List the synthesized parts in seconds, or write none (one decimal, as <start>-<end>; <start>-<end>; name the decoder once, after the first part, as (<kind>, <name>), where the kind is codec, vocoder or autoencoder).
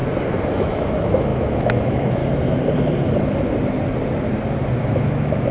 0.5-2.2 (autoencoder, DAC-VAE); 4.8-5.5